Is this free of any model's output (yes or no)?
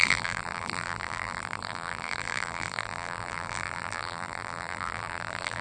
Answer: no